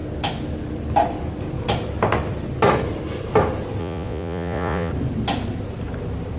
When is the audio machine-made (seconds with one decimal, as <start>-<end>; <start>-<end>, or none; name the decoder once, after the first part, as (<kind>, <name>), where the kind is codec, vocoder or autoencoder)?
3.8-4.9 (vocoder, Vocos)